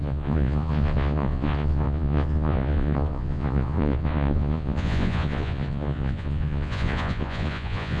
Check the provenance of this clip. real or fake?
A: fake